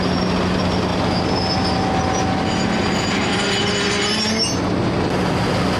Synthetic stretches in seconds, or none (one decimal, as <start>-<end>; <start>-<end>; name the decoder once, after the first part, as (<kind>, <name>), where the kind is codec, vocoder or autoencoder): none